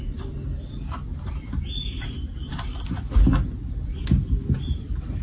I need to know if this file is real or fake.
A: real